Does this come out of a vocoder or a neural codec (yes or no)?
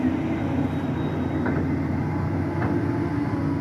no